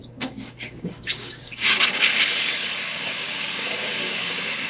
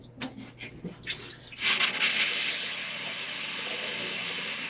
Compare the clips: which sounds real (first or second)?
second